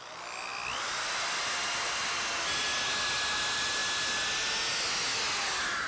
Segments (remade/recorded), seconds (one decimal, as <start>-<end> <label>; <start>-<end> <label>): 0.0-5.9 recorded